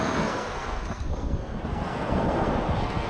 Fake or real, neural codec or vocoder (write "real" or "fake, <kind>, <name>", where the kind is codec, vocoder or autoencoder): fake, codec, SNAC